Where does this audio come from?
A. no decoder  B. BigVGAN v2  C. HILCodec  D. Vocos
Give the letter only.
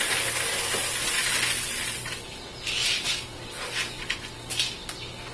A